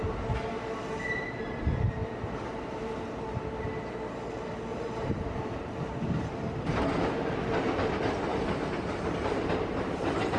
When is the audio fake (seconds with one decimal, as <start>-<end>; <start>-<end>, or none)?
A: 4.7-5.6; 8.3-9.4